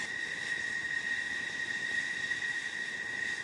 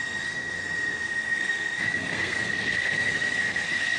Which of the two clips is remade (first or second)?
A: second